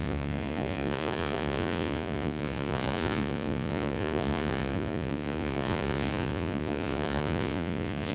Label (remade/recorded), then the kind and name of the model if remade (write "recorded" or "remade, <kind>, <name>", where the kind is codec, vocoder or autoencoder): remade, vocoder, Vocos